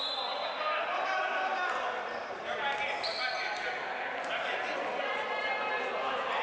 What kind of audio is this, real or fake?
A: real